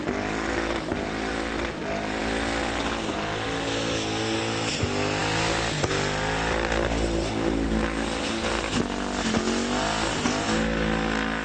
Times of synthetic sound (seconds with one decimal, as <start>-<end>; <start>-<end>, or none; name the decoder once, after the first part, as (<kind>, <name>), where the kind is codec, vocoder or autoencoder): none